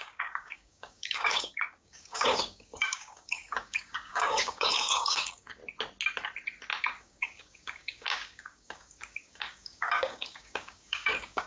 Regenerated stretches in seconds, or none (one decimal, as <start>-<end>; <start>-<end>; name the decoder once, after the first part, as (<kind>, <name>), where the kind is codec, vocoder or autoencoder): 0.0-5.6 (codec, DAC); 7.0-11.5